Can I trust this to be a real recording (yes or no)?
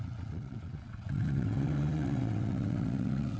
no